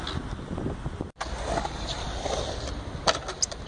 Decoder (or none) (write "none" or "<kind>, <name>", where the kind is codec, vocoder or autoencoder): none